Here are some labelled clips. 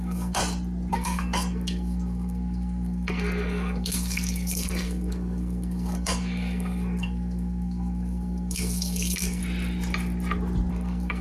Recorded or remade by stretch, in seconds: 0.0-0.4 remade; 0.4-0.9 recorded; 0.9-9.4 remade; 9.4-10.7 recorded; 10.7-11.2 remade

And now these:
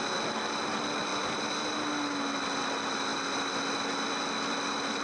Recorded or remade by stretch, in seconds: 0.0-5.0 recorded

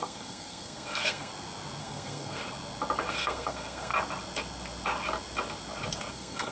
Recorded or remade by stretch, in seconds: 0.0-1.3 remade; 1.3-1.8 recorded; 1.8-2.4 remade; 2.4-3.1 recorded; 3.1-3.9 remade; 3.9-6.1 recorded; 6.1-6.5 remade